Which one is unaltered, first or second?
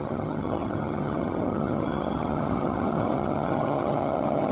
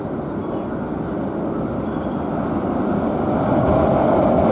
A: second